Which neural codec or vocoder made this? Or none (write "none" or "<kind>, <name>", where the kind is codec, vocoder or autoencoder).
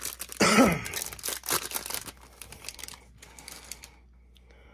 none